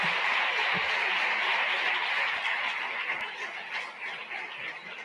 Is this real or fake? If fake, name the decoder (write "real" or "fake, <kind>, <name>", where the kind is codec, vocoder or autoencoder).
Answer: real